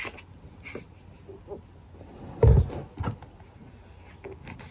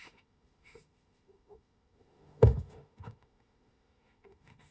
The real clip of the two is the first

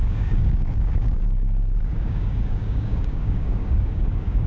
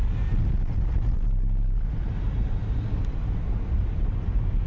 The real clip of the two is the second